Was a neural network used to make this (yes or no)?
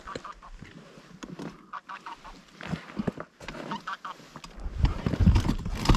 no